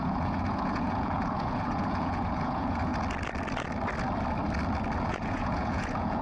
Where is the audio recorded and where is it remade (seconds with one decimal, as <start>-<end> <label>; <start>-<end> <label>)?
0.0-2.9 remade; 2.9-5.0 recorded; 5.0-6.2 remade